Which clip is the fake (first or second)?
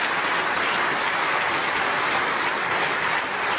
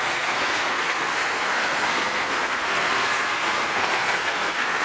second